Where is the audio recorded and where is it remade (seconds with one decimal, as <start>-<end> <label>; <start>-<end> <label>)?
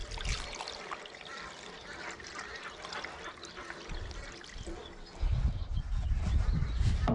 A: 0.0-7.1 recorded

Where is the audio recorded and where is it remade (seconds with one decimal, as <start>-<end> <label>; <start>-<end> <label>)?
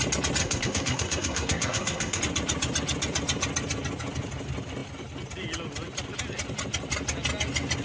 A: 0.0-0.4 recorded; 0.4-2.2 remade; 2.2-7.8 recorded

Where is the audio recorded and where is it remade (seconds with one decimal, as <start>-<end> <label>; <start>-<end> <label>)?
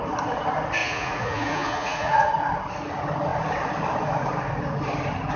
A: 0.0-0.8 recorded; 0.8-2.3 remade; 2.3-5.4 recorded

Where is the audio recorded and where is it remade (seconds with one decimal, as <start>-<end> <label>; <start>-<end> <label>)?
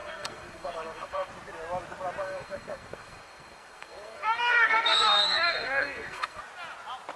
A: 0.0-1.3 remade; 1.3-2.2 recorded; 2.2-6.4 remade; 6.4-7.2 recorded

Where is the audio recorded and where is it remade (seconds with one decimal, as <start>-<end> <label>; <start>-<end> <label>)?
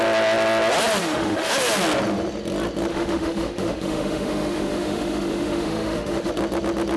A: 0.0-1.0 recorded; 1.0-1.5 remade; 1.5-2.9 recorded; 2.9-6.3 remade; 6.3-7.0 recorded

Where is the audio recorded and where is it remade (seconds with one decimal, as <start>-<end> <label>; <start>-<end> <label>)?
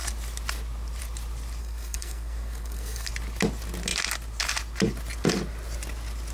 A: 0.0-1.6 recorded; 1.6-3.1 remade; 3.1-6.3 recorded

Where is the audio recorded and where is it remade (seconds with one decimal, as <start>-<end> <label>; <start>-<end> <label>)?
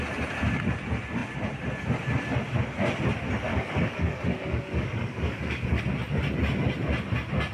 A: 0.0-3.5 recorded; 3.5-5.8 remade; 5.8-7.5 recorded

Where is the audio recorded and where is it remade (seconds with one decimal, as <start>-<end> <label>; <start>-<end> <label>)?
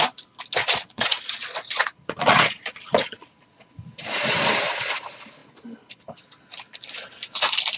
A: 0.0-0.6 recorded; 0.6-3.6 remade; 3.6-7.8 recorded